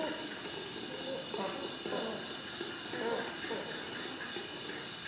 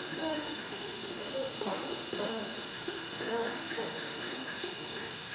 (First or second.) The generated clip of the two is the second